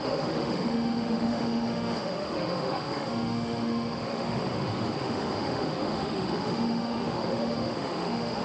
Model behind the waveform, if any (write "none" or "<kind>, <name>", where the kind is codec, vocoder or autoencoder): autoencoder, DAC-VAE